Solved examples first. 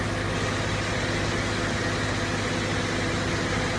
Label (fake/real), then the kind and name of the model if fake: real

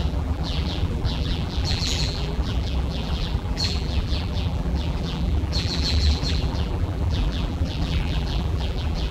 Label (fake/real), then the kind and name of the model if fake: fake, vocoder, BigVGAN v2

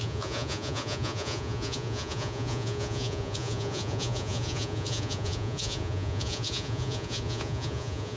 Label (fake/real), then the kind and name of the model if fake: fake, vocoder, Vocos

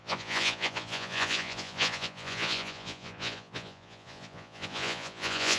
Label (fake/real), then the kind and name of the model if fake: fake, vocoder, Vocos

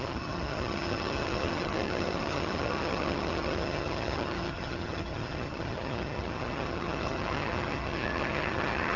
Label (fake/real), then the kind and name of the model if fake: fake, vocoder, HiFi-GAN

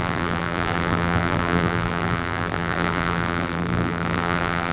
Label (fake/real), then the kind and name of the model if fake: fake, vocoder, BigVGAN v2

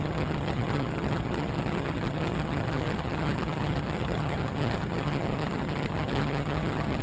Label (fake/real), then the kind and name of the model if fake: fake, vocoder, HiFi-GAN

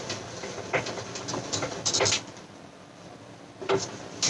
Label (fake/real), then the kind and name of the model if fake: real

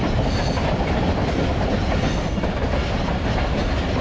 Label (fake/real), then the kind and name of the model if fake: real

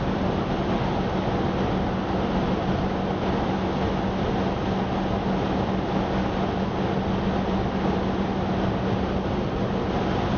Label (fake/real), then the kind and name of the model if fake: real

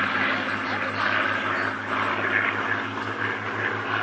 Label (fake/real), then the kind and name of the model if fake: real